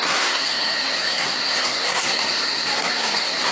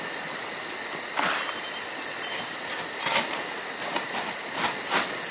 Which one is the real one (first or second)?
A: second